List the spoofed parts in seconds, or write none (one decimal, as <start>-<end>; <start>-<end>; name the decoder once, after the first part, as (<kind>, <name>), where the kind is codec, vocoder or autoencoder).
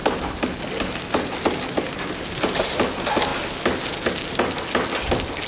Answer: none